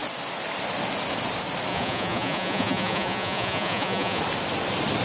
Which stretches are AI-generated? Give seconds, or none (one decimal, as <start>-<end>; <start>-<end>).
1.7-4.2